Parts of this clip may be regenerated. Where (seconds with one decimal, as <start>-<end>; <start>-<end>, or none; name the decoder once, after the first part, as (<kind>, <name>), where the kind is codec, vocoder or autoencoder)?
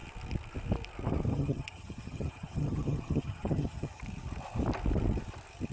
1.3-4.0 (vocoder, HiFi-GAN)